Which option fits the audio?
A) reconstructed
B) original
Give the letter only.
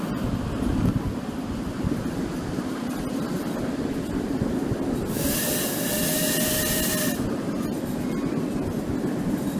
B